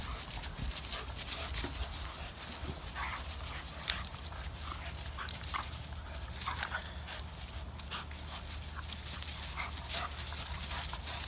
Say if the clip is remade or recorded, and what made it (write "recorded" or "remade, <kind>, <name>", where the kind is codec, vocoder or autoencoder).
recorded